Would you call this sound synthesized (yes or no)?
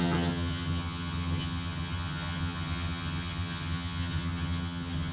yes